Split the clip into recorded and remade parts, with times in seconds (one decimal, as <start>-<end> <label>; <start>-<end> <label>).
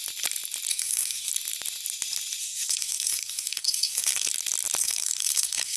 0.0-0.7 recorded; 0.7-1.3 remade; 1.3-2.4 recorded; 2.4-4.3 remade; 4.3-4.8 recorded; 4.8-5.8 remade